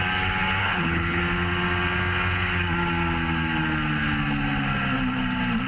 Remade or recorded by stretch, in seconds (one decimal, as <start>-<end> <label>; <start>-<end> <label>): 0.0-0.6 recorded; 0.6-1.2 remade; 1.2-5.7 recorded